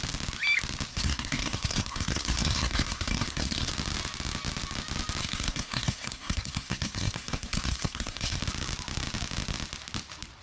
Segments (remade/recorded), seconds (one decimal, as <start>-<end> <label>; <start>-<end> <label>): 0.0-0.9 recorded; 0.9-3.7 remade; 3.7-5.2 recorded; 5.2-8.4 remade; 8.4-10.4 recorded